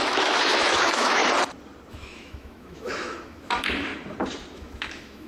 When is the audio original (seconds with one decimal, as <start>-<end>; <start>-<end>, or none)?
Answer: 1.2-1.9; 3.9-4.5